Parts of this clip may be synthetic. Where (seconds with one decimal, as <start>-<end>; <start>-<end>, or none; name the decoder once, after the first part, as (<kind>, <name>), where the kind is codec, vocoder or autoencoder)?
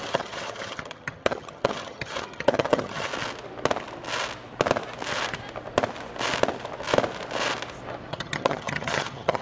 0.0-3.1 (vocoder, HiFi-GAN); 8.1-9.4